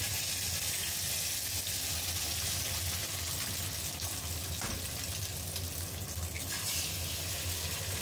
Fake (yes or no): no